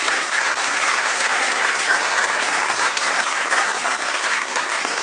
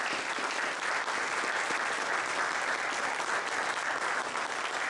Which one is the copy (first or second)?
first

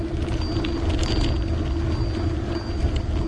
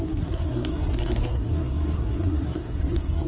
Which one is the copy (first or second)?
second